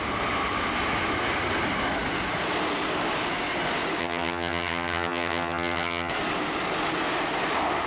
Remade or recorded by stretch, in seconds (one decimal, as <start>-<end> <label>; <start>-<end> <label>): 0.0-4.0 recorded; 4.0-6.1 remade; 6.1-7.9 recorded